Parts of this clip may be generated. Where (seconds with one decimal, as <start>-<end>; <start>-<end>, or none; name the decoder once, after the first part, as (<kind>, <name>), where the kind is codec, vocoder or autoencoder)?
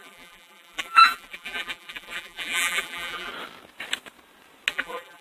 0.0-3.3 (vocoder, BigVGAN v2); 4.7-5.2